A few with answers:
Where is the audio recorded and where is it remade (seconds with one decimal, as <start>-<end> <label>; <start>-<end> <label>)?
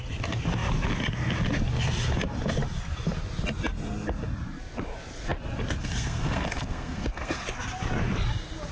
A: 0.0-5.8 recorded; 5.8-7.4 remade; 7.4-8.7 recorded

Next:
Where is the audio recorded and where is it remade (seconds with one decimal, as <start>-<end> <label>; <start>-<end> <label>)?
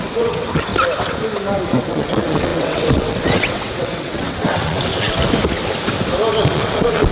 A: 0.0-0.7 remade; 0.7-1.8 recorded; 1.8-5.2 remade; 5.2-6.4 recorded; 6.4-7.1 remade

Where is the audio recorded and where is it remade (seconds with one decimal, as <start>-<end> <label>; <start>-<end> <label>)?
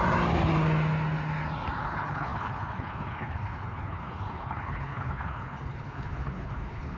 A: 0.0-1.8 recorded; 1.8-7.0 remade